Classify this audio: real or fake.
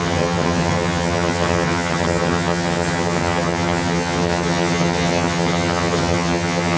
fake